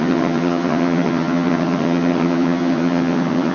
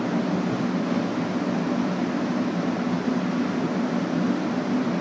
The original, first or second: second